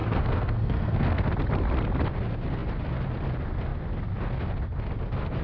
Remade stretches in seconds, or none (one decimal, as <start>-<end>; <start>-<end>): 0.0-1.3